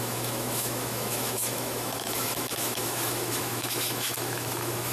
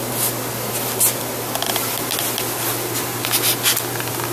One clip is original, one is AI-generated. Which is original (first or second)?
second